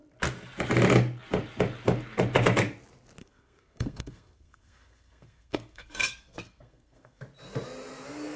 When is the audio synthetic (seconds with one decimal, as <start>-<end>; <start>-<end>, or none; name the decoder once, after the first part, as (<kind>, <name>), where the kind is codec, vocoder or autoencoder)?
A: 3.2-7.2 (codec, SNAC)